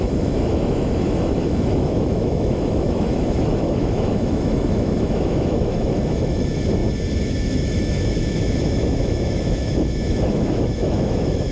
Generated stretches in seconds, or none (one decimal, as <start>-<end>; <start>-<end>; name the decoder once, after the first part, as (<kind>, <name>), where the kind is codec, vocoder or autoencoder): 0.0-6.8 (autoencoder, DAC-VAE); 7.3-11.5